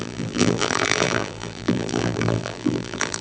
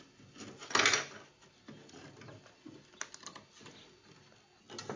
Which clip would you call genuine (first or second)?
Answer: second